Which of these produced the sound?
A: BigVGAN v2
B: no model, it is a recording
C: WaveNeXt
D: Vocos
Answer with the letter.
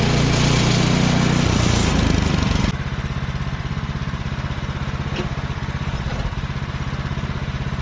B